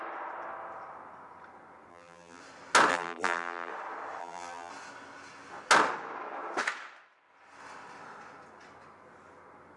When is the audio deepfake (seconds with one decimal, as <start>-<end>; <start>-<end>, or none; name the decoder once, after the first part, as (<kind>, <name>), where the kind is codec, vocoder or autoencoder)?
1.9-2.4 (vocoder, BigVGAN v2); 2.9-3.7; 4.2-4.7